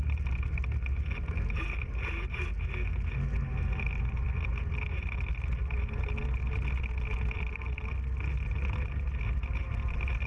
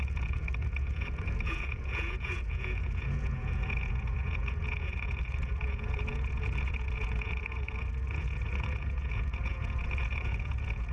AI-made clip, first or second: second